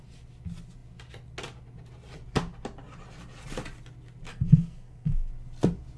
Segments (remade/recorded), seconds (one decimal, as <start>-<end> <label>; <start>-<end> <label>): 0.0-4.3 recorded; 4.3-5.3 remade; 5.3-6.0 recorded